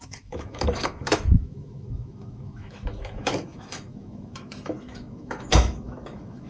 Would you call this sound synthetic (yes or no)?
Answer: yes